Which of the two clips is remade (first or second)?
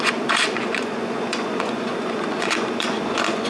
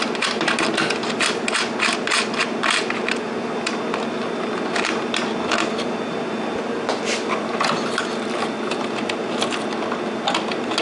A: first